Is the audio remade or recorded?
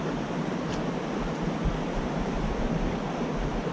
recorded